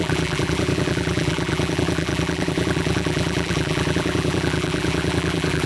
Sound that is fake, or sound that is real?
fake